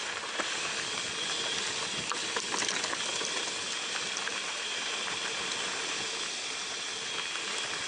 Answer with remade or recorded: recorded